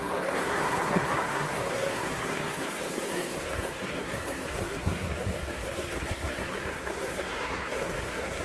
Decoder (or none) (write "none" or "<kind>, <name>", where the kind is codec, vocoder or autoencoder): codec, SNAC